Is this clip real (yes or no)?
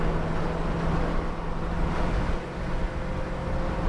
yes